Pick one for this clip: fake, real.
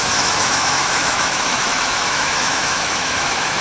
fake